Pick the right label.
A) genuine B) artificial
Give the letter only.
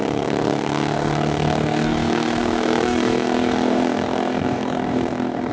B